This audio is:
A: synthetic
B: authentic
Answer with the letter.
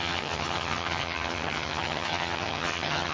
A